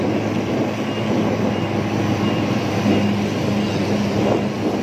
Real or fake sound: real